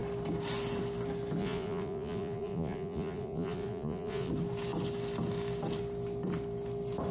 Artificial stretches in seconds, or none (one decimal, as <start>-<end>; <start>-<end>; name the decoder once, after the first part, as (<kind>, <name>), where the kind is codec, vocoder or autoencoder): 1.4-4.3 (vocoder, Vocos)